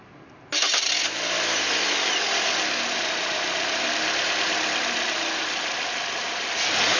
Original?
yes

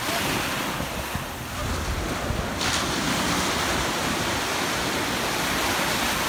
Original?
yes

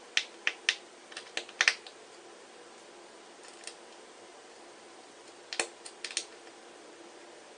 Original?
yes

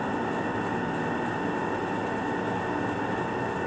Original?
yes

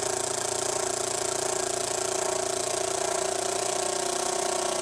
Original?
yes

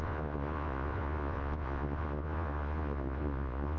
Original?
no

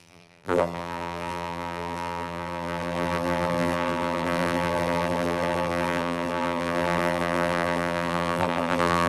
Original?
no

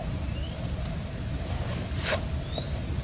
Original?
no